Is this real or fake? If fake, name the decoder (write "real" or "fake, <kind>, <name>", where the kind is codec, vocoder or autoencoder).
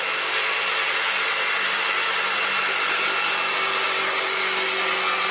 real